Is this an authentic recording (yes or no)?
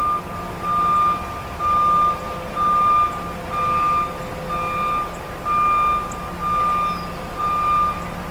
yes